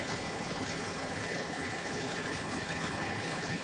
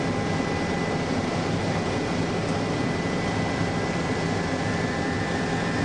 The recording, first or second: second